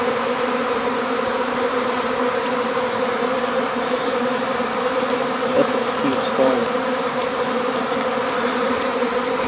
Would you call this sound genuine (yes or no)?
no